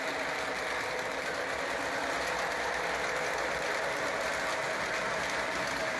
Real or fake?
real